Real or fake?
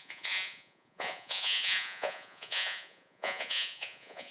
fake